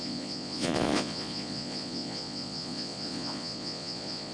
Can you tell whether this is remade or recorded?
remade